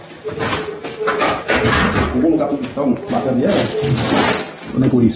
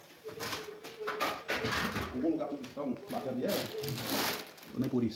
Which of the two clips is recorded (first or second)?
first